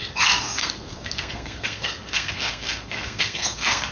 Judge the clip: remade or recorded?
remade